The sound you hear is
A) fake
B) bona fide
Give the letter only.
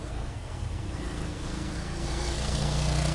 A